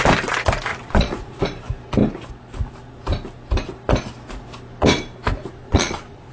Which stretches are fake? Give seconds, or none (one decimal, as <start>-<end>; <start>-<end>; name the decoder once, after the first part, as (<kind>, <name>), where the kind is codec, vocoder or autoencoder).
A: 0.7-1.4 (vocoder, Vocos); 5.6-6.3